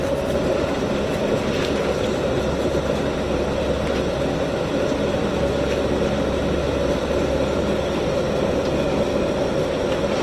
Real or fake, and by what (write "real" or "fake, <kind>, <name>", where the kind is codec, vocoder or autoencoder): real